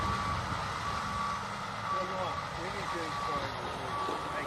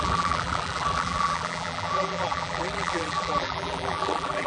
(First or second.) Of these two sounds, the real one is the first